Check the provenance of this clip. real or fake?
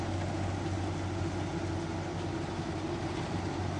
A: real